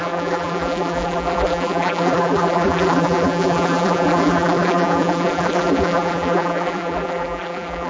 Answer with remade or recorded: remade